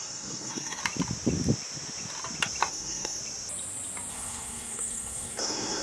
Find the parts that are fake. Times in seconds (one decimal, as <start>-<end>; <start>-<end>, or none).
0.0-0.8; 2.7-3.2; 4.1-5.8